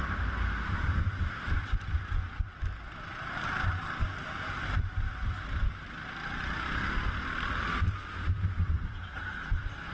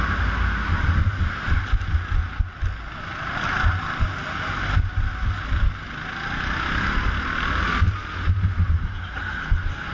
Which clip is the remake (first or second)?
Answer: first